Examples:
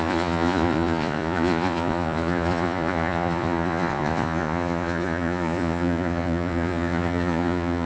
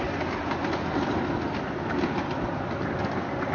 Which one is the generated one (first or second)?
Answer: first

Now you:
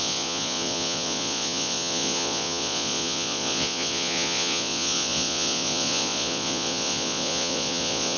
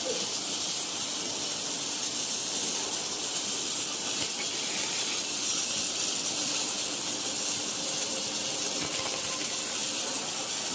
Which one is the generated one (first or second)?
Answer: first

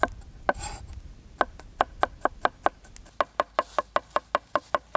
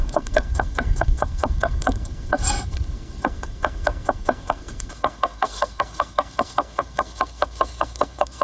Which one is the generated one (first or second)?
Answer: second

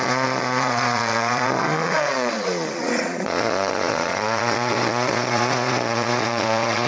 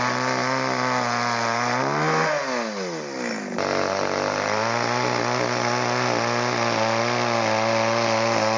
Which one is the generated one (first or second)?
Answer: first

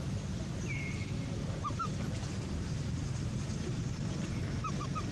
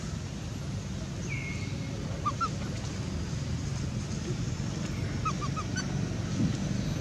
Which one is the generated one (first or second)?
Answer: first